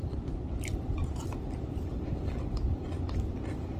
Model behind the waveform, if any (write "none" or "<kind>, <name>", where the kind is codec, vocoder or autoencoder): none